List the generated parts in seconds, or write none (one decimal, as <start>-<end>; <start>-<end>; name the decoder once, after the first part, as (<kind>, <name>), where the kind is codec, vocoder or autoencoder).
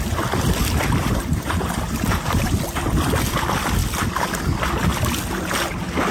1.0-2.5 (vocoder, BigVGAN v2)